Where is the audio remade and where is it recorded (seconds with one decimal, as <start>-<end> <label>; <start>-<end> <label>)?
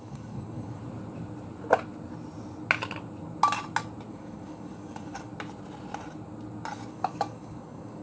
0.0-0.8 remade; 0.8-4.1 recorded; 4.1-5.3 remade; 5.3-6.9 recorded; 6.9-8.0 remade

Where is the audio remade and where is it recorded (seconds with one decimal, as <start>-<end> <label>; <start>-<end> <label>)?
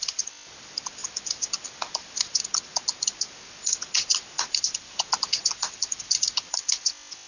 0.0-4.1 recorded; 4.1-6.2 remade; 6.2-7.3 recorded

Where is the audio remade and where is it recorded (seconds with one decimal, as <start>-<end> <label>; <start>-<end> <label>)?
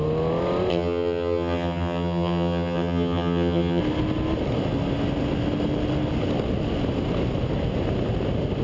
0.0-0.7 recorded; 0.7-3.8 remade; 3.8-8.6 recorded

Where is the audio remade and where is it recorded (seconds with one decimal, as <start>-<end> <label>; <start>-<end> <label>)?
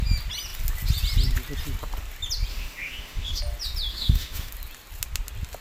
0.0-2.5 recorded; 2.5-3.4 remade; 3.4-3.9 recorded; 3.9-4.5 remade; 4.5-5.6 recorded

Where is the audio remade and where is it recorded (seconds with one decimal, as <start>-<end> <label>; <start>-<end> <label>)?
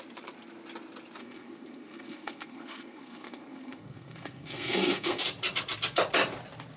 0.0-1.2 recorded; 1.2-5.2 remade; 5.2-6.8 recorded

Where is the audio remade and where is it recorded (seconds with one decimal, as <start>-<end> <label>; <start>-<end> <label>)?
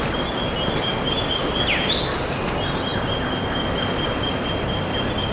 0.0-5.3 recorded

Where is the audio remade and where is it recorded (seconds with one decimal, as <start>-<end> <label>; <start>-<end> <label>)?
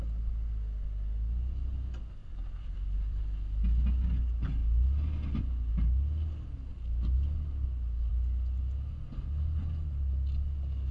0.0-2.2 recorded; 2.2-3.2 remade; 3.2-10.9 recorded